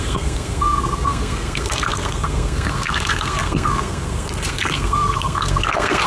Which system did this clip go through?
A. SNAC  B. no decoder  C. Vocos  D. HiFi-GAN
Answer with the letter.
A